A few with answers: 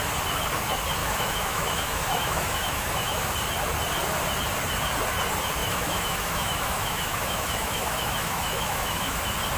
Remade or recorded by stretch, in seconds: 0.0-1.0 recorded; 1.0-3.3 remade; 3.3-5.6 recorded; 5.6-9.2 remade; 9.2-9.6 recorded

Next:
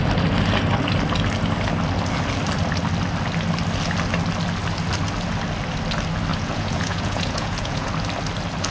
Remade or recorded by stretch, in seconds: 0.0-6.3 recorded; 6.3-7.9 remade; 7.9-8.7 recorded

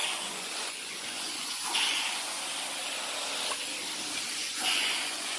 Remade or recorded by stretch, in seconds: 0.0-2.5 remade; 2.5-4.4 recorded; 4.4-5.4 remade

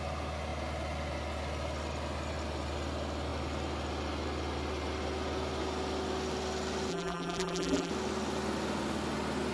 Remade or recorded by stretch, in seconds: 0.0-6.9 recorded; 6.9-7.9 remade; 7.9-9.5 recorded

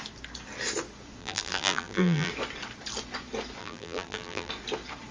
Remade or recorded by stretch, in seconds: 0.0-1.2 recorded; 1.2-2.3 remade; 2.3-3.6 recorded; 3.6-4.5 remade; 4.5-5.1 recorded

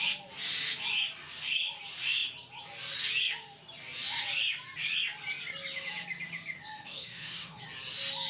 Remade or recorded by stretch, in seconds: 0.0-6.7 recorded; 6.7-7.6 remade; 7.6-8.3 recorded

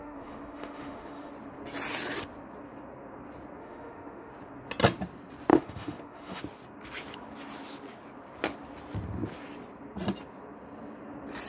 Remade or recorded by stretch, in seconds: 0.0-1.3 remade; 1.3-3.6 recorded; 3.6-4.3 remade; 4.3-5.5 recorded; 5.5-6.4 remade; 6.4-11.5 recorded